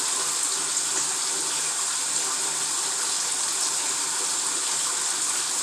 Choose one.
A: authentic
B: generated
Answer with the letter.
A